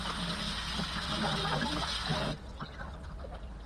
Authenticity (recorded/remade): recorded